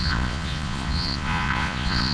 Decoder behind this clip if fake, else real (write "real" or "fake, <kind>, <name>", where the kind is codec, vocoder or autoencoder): fake, vocoder, Vocos